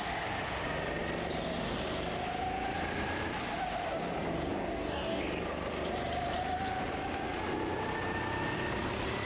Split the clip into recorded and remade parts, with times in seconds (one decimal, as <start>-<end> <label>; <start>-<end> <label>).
0.0-4.5 recorded; 4.5-5.2 remade; 5.2-9.3 recorded